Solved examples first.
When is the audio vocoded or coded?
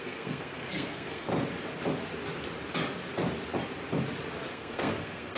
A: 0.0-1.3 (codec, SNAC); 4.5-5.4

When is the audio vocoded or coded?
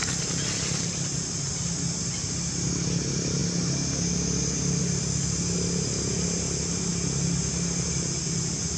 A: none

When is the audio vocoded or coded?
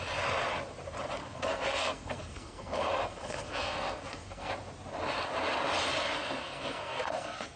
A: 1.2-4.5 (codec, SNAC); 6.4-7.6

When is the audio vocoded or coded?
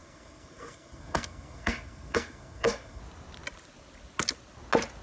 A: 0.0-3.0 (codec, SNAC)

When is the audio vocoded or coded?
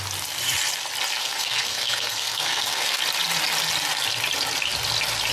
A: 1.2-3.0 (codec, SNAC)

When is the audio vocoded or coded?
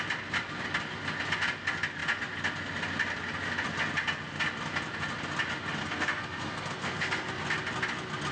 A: 5.8-7.3 (codec, SNAC)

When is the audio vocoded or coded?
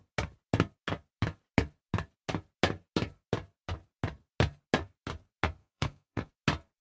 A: 5.6-6.3 (codec, SNAC)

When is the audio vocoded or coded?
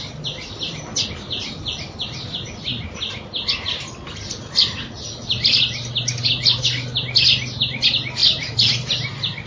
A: none